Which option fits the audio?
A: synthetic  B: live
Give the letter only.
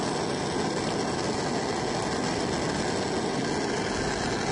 B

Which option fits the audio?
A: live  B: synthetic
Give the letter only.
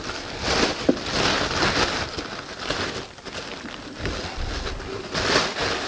A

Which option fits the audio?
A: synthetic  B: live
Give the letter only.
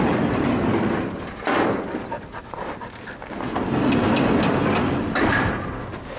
B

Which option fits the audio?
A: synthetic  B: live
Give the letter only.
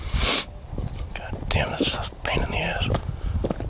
B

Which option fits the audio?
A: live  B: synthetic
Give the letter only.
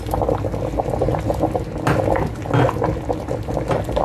A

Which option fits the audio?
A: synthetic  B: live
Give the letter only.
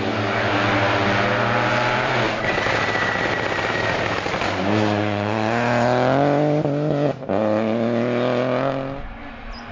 B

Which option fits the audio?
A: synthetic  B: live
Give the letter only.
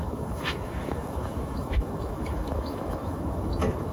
A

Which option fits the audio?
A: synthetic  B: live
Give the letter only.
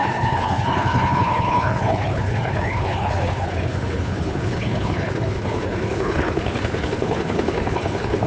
A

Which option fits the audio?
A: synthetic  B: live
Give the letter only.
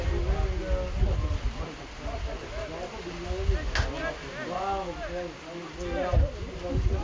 B